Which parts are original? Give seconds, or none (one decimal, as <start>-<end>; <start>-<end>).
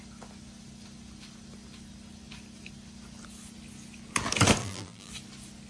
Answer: 0.0-4.6; 5.1-5.7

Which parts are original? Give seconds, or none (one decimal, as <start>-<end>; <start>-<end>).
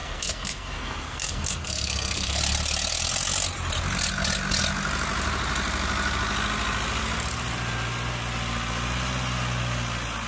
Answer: 2.4-10.3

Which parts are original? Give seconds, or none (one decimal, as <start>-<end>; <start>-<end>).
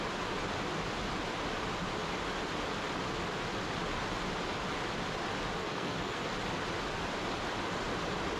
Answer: 0.0-5.6; 6.3-8.4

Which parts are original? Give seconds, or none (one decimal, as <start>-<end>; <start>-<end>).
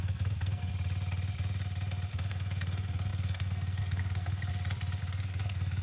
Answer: 0.7-2.1; 4.5-5.0